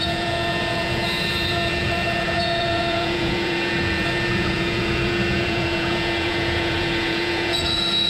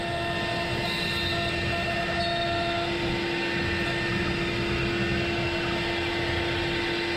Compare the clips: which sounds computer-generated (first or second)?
first